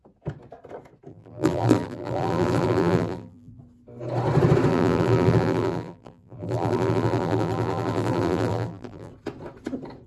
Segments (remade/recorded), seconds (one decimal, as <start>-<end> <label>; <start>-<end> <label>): 0.0-1.1 recorded; 1.1-3.6 remade; 3.6-4.7 recorded; 4.7-9.1 remade; 9.1-10.1 recorded